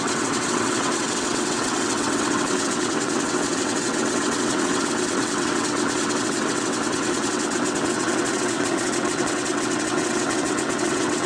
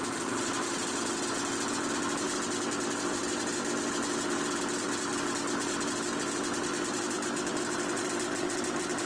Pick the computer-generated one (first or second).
first